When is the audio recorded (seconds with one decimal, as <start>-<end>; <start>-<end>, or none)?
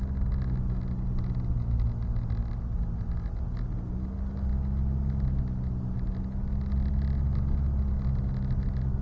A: 0.0-9.0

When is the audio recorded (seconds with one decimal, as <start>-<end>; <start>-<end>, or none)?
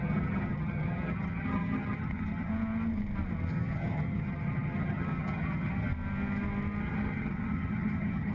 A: 2.5-3.5; 5.9-6.8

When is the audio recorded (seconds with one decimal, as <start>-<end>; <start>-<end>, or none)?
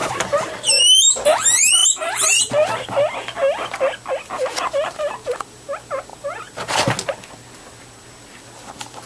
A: 0.5-9.1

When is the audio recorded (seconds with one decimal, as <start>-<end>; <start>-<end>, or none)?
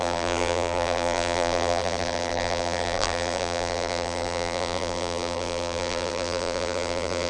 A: none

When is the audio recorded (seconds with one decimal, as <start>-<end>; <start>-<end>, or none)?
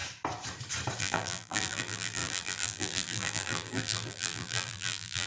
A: 0.0-1.0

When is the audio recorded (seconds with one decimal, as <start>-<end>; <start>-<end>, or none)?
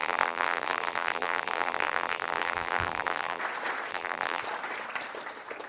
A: 3.4-3.9; 4.4-5.7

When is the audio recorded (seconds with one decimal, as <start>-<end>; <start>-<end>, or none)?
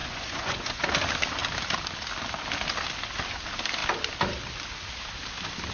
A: 0.8-5.7